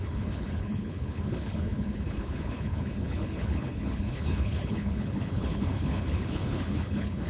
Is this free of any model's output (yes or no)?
no